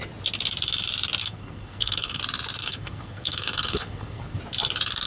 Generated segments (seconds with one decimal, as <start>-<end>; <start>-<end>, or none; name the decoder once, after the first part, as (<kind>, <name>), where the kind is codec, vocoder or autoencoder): 1.2-2.2 (codec, SNAC); 2.6-4.4